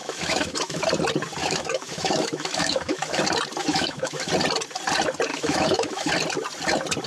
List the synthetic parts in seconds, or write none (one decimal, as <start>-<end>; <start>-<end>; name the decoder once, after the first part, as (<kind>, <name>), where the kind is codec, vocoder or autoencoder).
0.0-0.8 (autoencoder, DAC-VAE); 1.4-3.2; 3.6-4.3; 5.3-6.1

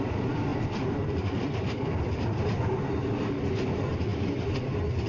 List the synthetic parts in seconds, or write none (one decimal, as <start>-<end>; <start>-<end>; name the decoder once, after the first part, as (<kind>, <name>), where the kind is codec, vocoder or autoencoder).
0.0-4.1 (vocoder, BigVGAN v2)

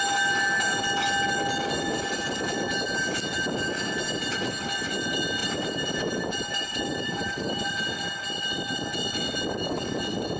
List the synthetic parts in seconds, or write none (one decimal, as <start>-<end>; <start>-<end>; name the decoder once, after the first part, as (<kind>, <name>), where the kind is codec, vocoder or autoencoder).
5.4-7.7 (vocoder, BigVGAN v2)

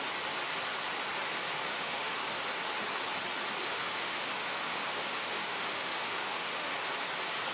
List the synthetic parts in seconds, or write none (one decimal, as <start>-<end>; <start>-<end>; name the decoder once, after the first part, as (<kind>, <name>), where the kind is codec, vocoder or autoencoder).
1.7-2.4 (autoencoder, DAC-VAE); 3.6-6.7

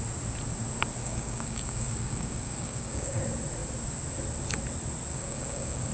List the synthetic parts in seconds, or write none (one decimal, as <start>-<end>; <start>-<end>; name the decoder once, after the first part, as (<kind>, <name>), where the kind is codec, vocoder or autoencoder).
1.0-3.2 (codec, DAC); 5.1-5.9

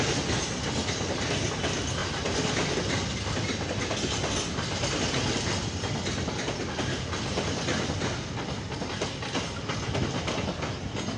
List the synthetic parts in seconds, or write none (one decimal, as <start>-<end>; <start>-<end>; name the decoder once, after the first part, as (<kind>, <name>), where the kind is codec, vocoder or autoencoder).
none

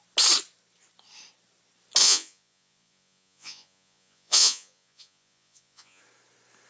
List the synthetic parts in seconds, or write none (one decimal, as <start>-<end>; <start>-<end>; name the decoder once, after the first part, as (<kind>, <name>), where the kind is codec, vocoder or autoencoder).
2.0-6.0 (vocoder, Vocos)

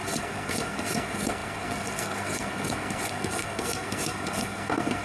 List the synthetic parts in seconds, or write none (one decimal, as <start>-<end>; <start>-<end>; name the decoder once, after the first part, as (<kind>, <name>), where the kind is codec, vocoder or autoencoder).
0.0-5.0 (codec, SNAC)